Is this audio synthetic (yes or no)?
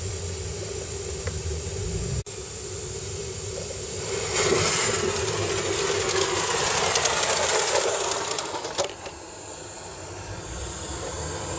yes